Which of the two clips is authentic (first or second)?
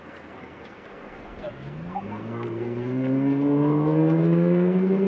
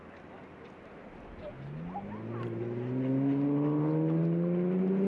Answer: second